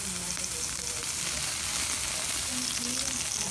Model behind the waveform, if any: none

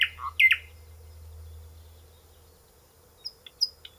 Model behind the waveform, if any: none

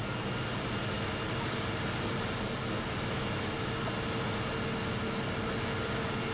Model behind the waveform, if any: none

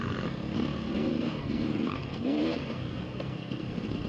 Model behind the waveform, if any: codec, SNAC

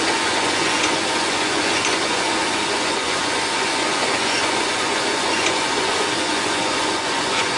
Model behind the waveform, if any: vocoder, Vocos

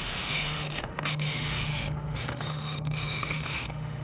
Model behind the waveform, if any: autoencoder, DAC-VAE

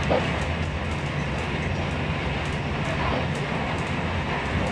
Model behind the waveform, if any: none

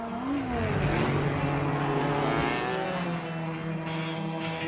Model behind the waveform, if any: none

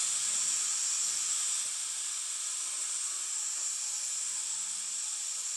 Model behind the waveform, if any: none